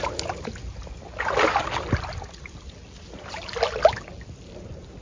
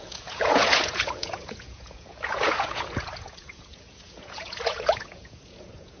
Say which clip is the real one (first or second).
first